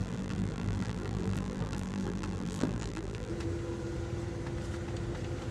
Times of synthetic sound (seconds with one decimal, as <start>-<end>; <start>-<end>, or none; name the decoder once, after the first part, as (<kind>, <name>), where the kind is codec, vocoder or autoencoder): 0.0-3.3 (vocoder, BigVGAN v2)